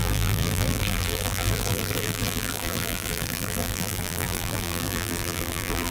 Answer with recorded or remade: remade